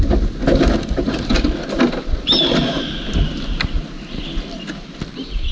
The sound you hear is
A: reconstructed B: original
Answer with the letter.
B